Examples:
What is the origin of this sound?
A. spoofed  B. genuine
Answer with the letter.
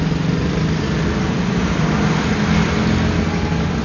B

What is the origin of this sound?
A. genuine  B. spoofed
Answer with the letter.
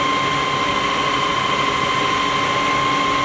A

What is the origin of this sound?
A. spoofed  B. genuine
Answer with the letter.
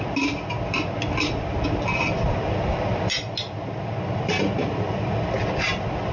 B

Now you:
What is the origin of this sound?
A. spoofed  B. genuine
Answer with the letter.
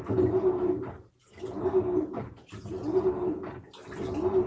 B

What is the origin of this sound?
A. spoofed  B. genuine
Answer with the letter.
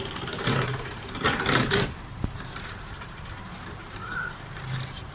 A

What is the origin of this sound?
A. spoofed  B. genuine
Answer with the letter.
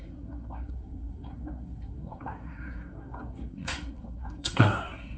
A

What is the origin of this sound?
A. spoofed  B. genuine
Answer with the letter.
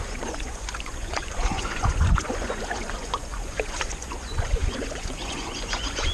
A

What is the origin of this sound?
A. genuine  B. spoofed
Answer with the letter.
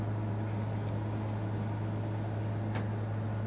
A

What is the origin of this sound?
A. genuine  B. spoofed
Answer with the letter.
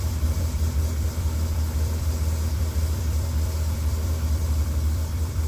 B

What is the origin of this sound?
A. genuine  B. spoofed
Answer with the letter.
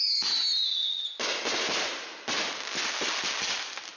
A